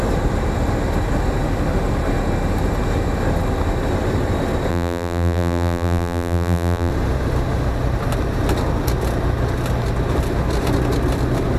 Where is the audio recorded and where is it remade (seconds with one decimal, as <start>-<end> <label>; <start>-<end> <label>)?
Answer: 0.0-4.7 recorded; 4.7-6.9 remade; 6.9-11.6 recorded